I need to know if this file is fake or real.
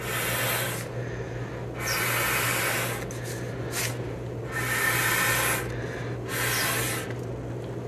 real